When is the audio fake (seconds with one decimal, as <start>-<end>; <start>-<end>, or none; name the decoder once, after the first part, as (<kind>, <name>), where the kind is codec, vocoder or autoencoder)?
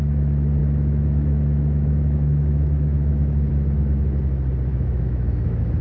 0.6-3.5 (autoencoder, DAC-VAE); 4.7-5.8